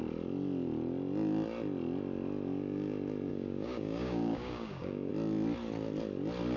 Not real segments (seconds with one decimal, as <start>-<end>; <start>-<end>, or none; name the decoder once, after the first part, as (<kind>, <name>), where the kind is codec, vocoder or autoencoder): 3.3-5.1 (codec, DAC)